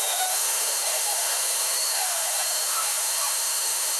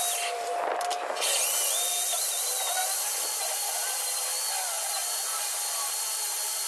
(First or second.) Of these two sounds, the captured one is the second